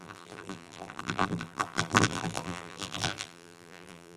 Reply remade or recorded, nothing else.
remade